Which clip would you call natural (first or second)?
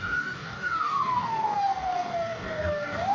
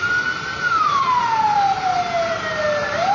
second